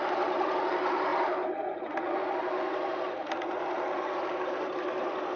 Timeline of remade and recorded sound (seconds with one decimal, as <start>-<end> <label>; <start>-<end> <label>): 0.0-5.4 recorded